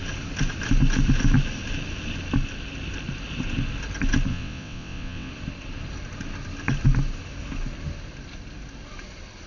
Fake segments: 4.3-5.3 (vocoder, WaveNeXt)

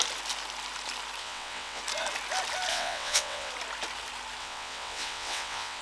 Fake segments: 1.2-1.8 (vocoder, WaveNeXt); 2.7-3.5; 4.4-5.8

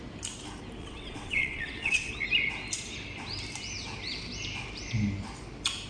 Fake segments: 0.8-2.1 (vocoder, WaveNeXt)